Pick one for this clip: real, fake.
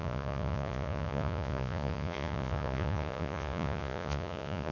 fake